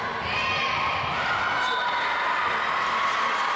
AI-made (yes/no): no